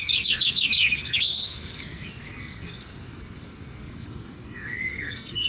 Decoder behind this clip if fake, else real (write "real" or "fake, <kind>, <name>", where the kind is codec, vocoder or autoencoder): fake, codec, SNAC